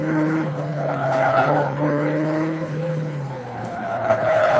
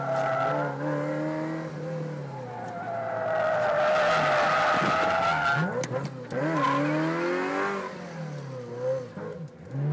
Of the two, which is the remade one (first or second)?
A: first